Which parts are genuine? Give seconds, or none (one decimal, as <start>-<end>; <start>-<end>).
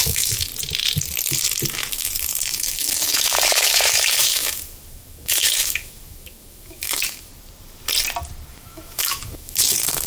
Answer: 0.5-1.7; 7.3-8.5